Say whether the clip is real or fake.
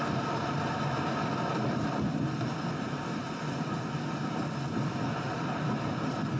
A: real